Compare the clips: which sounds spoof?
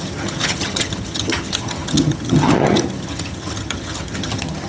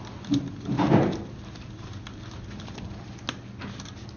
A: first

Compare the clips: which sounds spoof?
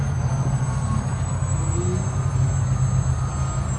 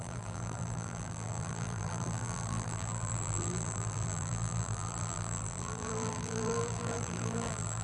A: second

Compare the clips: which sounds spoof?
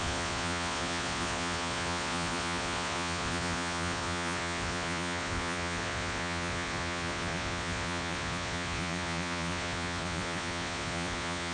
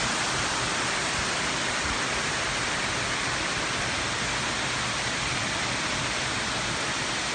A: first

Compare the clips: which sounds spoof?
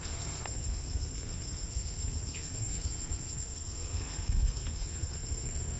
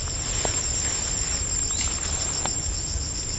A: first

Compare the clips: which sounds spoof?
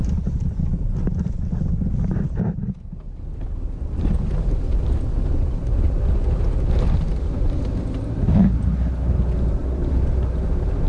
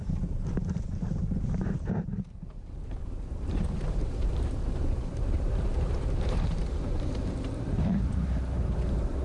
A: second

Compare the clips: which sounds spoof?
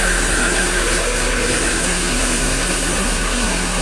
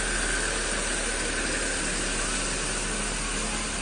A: first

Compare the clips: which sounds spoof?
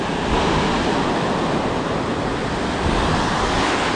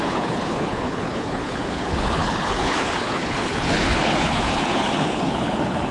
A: second